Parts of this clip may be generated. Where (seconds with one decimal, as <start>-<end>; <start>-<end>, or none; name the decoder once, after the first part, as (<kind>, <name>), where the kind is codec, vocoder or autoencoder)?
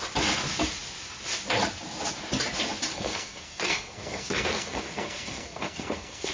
2.9-6.3 (codec, SNAC)